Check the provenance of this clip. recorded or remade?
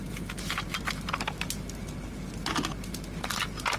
recorded